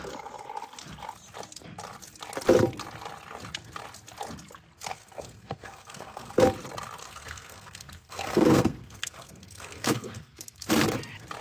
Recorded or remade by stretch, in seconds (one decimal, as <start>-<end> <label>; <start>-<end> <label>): 0.0-4.9 recorded; 4.9-6.3 remade; 6.3-7.0 recorded; 7.0-10.7 remade; 10.7-11.4 recorded

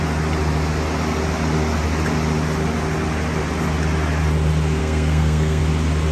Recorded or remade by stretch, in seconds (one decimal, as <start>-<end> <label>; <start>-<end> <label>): 0.0-4.8 recorded; 4.8-5.6 remade; 5.6-6.1 recorded